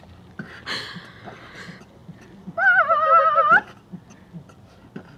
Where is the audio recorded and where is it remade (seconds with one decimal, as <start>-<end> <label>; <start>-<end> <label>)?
0.0-5.2 recorded